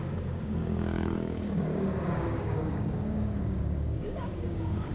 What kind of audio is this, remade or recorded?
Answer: remade